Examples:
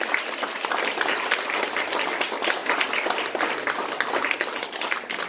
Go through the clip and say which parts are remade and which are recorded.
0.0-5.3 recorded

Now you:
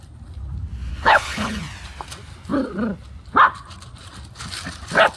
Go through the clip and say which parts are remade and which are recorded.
0.0-0.9 recorded; 0.9-1.6 remade; 1.6-5.2 recorded

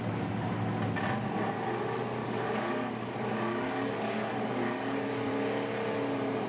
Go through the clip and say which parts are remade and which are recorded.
0.0-2.2 recorded; 2.2-5.3 remade; 5.3-6.5 recorded

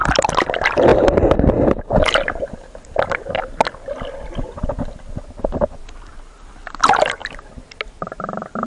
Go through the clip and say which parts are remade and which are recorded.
0.0-0.5 remade; 0.5-8.7 recorded

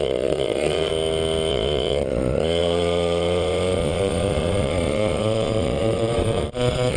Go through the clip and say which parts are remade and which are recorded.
0.0-0.9 remade; 0.9-1.5 recorded; 1.5-7.0 remade

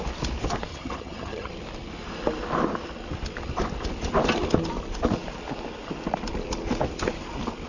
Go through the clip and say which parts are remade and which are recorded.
0.0-0.7 recorded; 0.7-1.5 remade; 1.5-7.7 recorded